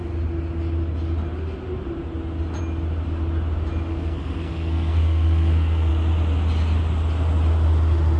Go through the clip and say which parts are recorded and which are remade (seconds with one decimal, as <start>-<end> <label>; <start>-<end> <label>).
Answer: 0.0-3.9 recorded; 3.9-5.9 remade; 5.9-8.2 recorded